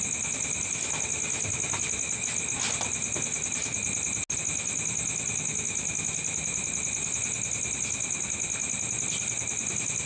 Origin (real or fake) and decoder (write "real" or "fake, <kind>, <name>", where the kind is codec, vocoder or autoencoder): real